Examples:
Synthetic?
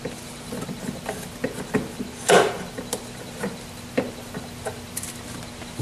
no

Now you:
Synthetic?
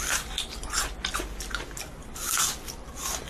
no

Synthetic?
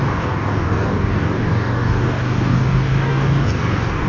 yes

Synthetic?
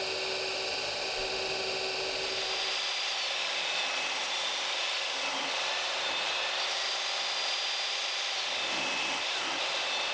no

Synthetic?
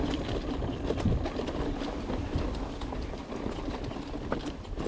no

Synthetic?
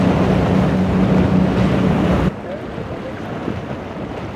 no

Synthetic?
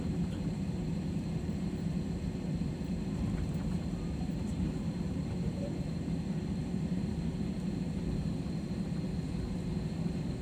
yes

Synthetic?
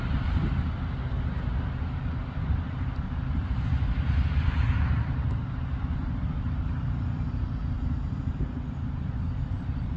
no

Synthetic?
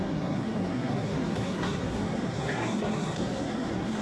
yes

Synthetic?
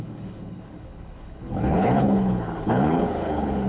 yes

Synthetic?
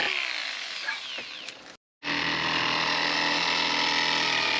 no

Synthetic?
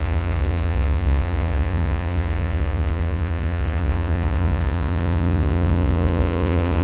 yes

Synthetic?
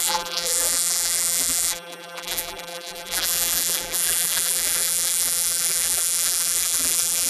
yes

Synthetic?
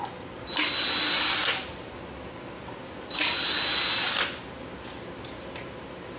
no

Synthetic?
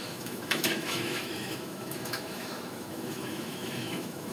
yes